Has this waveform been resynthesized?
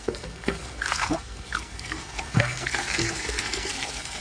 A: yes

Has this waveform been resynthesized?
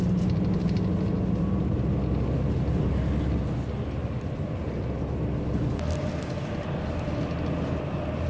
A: no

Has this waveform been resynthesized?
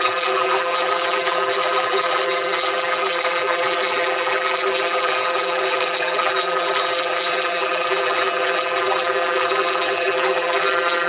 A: yes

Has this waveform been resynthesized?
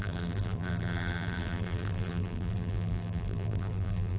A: yes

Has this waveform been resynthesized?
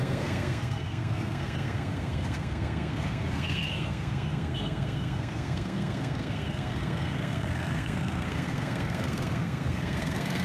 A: yes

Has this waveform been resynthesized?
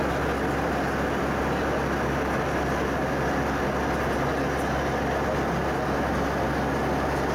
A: no